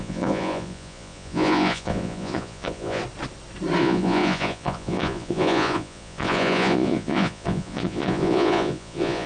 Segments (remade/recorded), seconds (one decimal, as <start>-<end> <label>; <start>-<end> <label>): 0.0-3.0 remade; 3.0-3.8 recorded; 3.8-9.3 remade